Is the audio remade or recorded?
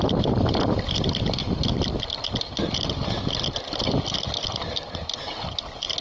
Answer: recorded